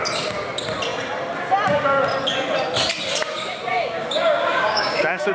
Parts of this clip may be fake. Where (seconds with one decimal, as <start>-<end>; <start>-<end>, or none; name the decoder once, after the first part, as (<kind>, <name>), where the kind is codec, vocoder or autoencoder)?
3.7-5.3 (codec, DAC)